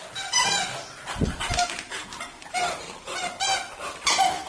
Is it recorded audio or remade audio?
remade